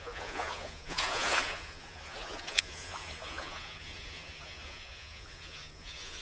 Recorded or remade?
remade